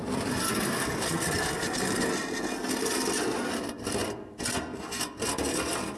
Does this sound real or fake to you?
real